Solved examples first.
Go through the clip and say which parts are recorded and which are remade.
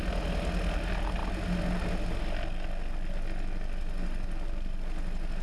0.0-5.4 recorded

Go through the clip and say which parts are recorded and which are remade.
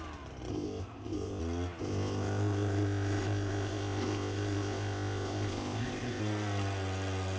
0.0-0.5 recorded; 0.5-1.4 remade; 1.4-1.8 recorded; 1.8-6.2 remade; 6.2-7.4 recorded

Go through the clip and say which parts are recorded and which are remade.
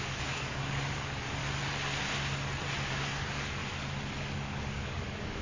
0.0-1.4 remade; 1.4-2.9 recorded; 2.9-3.6 remade; 3.6-4.2 recorded; 4.2-5.4 remade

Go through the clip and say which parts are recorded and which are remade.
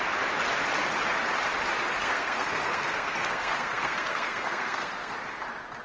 0.0-2.0 recorded; 2.0-5.1 remade; 5.1-5.8 recorded